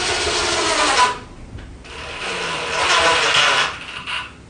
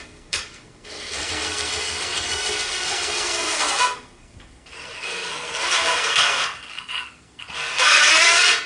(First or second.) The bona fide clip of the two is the first